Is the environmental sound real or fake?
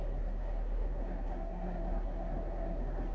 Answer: fake